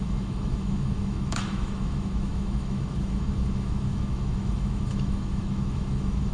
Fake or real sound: fake